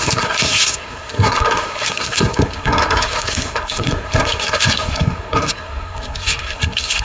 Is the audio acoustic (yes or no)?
no